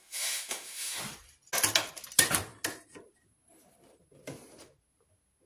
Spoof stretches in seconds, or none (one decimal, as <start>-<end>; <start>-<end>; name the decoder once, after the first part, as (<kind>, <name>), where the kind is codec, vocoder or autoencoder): 0.0-1.0 (autoencoder, DAC-VAE)